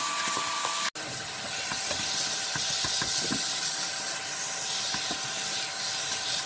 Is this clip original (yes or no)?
yes